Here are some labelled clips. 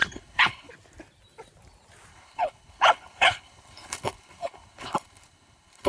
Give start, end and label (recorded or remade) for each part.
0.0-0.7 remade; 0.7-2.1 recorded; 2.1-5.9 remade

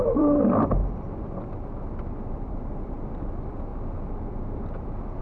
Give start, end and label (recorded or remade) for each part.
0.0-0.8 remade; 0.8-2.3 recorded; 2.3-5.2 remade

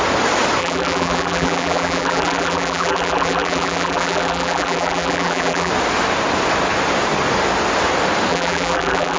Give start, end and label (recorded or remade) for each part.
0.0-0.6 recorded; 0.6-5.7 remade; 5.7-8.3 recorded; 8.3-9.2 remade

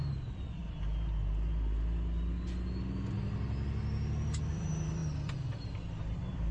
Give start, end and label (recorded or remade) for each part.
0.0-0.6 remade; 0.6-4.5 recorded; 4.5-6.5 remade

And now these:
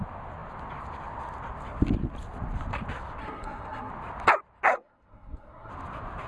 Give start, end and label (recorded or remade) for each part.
0.0-3.2 recorded; 3.2-3.9 remade; 3.9-4.7 recorded; 4.7-5.7 remade; 5.7-6.3 recorded

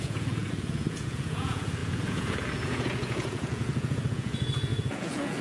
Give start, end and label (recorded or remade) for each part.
0.0-5.4 remade

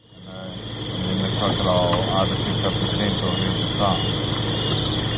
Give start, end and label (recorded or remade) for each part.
0.0-5.2 recorded